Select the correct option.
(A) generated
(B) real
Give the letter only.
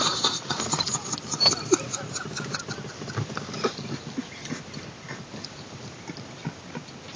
B